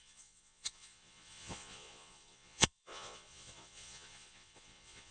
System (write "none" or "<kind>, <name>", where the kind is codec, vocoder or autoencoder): vocoder, Vocos